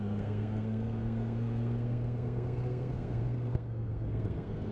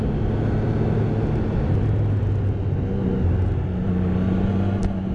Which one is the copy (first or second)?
first